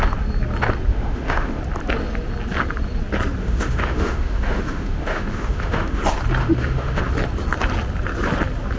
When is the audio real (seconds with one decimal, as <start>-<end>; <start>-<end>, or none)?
0.0-0.9; 1.6-3.4; 6.0-6.4; 7.0-8.8